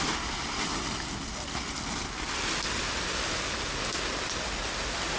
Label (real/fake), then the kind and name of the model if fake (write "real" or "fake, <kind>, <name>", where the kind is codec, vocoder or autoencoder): real